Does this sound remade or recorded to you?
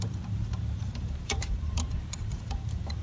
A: remade